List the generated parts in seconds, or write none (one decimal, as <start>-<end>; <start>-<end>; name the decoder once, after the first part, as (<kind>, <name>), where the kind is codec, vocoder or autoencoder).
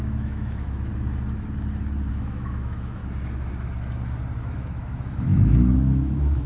0.0-0.9 (autoencoder, DAC-VAE); 2.1-3.0; 4.4-6.5